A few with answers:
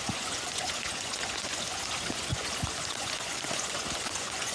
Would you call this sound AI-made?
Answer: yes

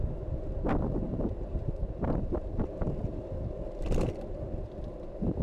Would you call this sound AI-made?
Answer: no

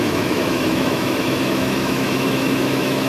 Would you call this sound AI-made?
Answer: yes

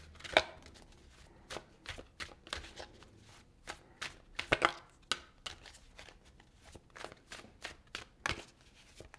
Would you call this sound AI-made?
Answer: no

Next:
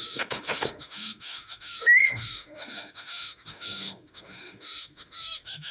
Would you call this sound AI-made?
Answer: yes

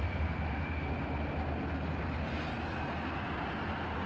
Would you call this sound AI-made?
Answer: no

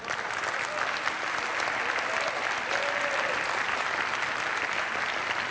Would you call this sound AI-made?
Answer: no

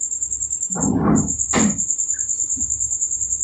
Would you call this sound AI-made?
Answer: yes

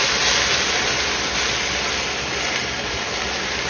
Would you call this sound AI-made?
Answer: no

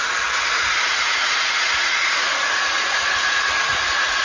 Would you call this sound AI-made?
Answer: yes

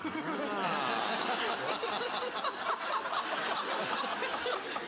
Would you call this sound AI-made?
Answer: no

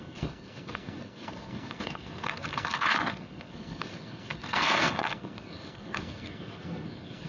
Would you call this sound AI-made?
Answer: yes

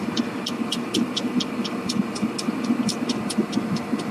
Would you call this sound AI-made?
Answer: no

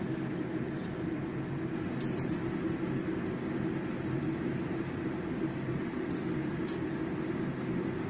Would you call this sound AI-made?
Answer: no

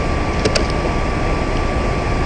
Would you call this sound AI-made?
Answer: no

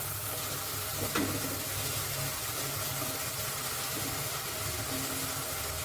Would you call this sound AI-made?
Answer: no